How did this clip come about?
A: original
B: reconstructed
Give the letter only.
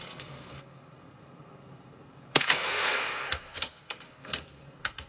B